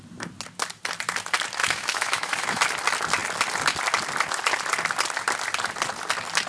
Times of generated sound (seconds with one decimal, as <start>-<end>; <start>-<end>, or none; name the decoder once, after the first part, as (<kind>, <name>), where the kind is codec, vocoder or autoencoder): 1.6-2.6 (autoencoder, DAC-VAE)